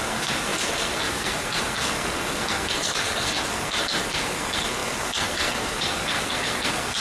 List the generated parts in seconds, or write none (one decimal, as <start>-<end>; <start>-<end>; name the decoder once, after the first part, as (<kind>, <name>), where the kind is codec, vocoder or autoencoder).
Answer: 0.0-7.0 (codec, SNAC)